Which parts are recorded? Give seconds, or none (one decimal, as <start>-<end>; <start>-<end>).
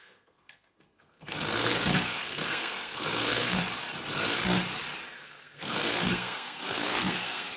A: 3.6-5.2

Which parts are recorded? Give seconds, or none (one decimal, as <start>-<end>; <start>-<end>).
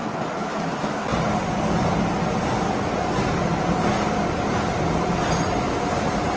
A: 0.0-6.4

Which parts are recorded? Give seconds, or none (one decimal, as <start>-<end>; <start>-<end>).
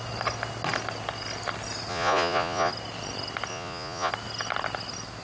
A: 0.0-1.9; 2.7-3.5; 4.1-5.2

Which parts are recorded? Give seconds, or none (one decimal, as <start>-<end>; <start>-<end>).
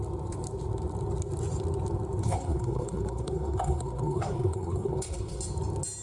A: 0.0-2.2; 5.4-6.0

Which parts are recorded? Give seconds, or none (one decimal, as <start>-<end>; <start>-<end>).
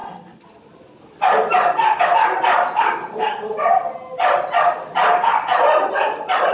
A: 0.0-6.5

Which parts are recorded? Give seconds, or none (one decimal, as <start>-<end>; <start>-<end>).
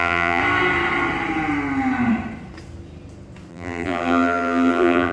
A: 0.4-3.5